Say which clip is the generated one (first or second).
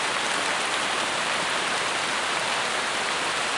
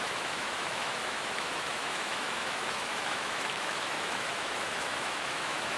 second